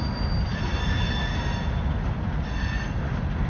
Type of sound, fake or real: real